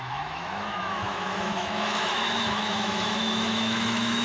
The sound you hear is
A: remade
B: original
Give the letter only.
A